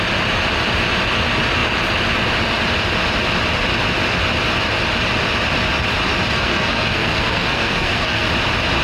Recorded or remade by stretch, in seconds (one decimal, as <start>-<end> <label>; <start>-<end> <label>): 0.0-6.3 recorded; 6.3-8.3 remade; 8.3-8.8 recorded